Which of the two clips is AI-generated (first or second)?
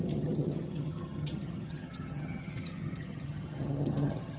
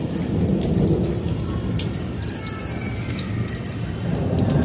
first